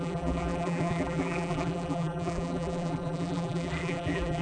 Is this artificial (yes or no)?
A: yes